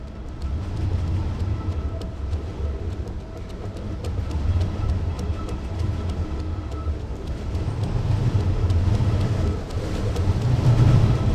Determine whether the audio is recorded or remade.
recorded